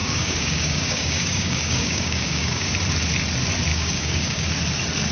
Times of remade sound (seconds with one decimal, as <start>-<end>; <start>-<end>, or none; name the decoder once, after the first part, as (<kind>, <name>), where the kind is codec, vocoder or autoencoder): 0.0-2.7 (codec, DAC); 3.7-4.5